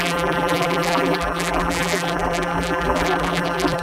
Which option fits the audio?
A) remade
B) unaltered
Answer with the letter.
A